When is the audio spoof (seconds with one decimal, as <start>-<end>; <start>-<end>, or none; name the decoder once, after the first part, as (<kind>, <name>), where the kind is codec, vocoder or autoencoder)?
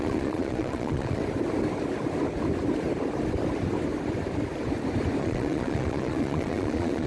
0.0-1.2 (vocoder, Vocos); 5.2-7.1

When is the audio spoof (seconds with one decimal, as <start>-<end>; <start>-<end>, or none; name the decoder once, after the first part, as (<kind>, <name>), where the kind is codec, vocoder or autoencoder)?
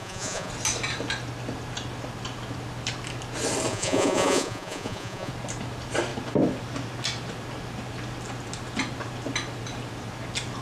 0.0-0.5 (vocoder, Vocos); 3.7-5.3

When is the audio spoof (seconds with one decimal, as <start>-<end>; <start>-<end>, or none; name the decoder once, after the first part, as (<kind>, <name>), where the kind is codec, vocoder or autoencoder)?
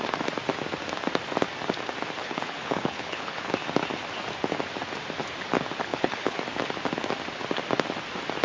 2.2-3.5 (codec, HILCodec); 5.9-6.4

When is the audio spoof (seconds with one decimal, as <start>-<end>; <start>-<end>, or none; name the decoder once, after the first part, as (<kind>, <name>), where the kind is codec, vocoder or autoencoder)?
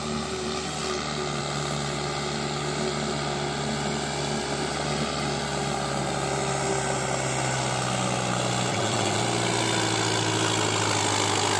8.7-9.2 (vocoder, WaveNeXt)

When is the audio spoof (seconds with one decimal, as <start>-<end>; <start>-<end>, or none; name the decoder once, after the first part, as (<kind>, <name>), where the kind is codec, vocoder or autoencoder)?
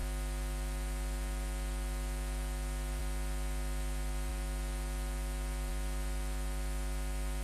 none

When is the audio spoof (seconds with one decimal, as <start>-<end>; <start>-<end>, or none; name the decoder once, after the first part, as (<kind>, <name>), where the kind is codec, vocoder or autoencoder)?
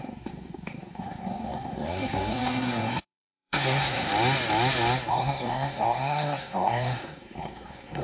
0.0-4.1 (codec, SNAC); 5.1-8.0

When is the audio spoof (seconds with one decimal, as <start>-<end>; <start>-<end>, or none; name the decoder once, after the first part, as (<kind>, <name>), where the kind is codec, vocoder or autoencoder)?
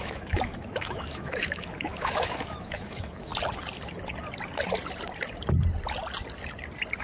0.0-3.3 (autoencoder, DAC-VAE)